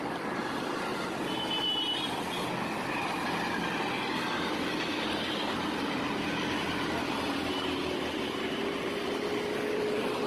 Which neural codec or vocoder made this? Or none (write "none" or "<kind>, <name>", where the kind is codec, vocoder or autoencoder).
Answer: none